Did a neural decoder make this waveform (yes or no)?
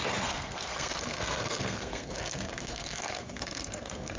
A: yes